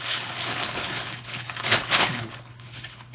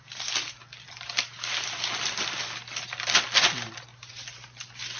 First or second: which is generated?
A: first